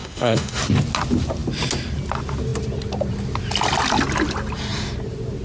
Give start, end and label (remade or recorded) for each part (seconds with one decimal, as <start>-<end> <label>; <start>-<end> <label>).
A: 0.0-0.6 remade; 0.6-5.4 recorded